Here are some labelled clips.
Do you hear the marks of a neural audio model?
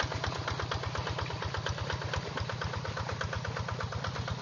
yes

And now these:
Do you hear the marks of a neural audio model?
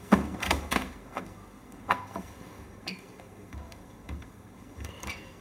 yes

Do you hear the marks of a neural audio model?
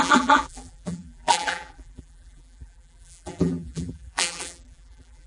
yes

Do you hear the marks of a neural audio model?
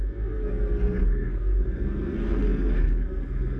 yes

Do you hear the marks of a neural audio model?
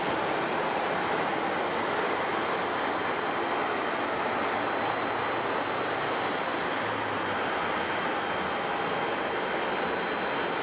no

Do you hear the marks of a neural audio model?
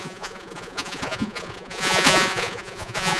yes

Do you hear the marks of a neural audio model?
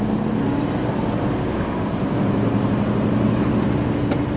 no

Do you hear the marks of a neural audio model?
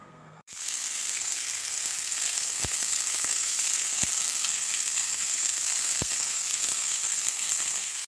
yes